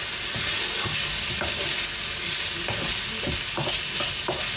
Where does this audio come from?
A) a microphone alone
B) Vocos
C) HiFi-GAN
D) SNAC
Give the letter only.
A